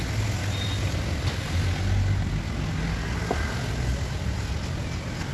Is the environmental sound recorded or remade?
recorded